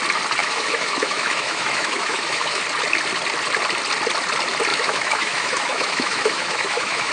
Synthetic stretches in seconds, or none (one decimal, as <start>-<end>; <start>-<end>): 0.4-2.6; 4.7-7.1